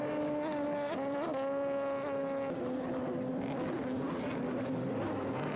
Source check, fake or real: real